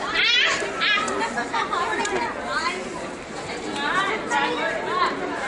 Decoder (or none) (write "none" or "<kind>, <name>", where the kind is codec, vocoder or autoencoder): none